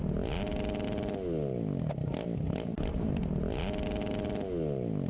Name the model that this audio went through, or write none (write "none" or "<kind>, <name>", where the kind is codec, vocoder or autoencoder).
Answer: none